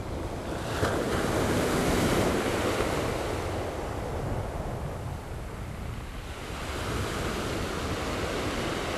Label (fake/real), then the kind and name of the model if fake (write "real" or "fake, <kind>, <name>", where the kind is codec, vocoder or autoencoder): real